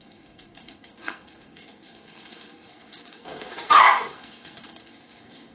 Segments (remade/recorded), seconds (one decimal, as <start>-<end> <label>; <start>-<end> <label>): 0.0-5.5 remade